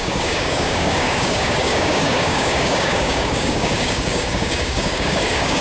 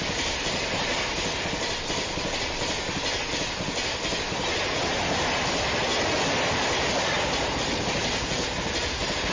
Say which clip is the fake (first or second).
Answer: first